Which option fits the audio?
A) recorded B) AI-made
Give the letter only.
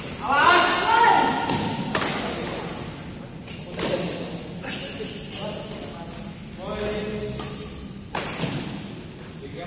A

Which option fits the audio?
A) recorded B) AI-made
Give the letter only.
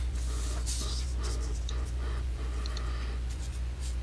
B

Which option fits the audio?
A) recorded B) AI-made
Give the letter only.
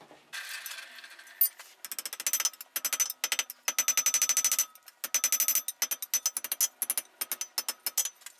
A